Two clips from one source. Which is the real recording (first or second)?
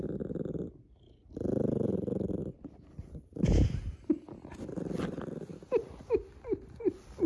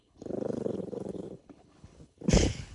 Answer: first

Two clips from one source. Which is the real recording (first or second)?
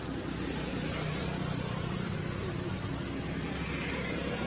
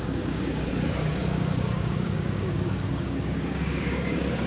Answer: first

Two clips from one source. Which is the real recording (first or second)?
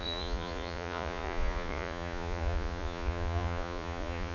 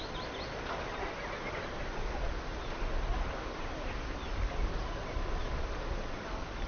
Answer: second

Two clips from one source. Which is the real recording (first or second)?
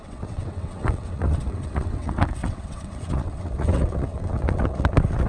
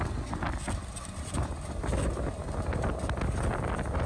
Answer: second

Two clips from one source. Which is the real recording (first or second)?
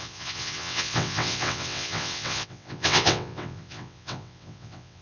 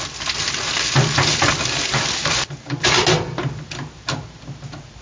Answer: second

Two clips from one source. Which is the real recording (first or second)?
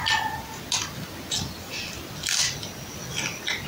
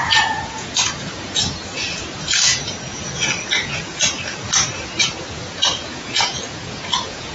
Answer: first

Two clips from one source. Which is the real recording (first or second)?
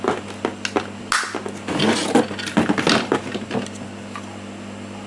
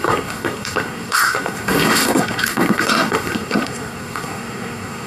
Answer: first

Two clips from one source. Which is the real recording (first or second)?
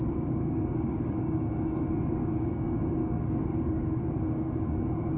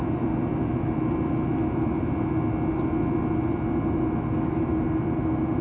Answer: second